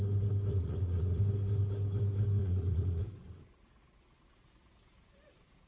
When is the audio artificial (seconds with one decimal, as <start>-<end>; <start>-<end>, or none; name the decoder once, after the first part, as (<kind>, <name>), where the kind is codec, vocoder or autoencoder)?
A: 0.5-1.2 (vocoder, Vocos); 2.4-3.0